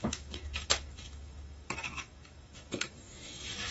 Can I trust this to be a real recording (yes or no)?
no